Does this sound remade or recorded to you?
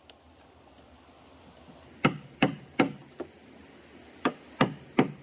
recorded